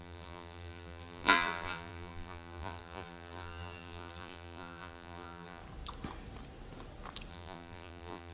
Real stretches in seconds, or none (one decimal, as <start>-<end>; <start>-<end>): 5.6-7.3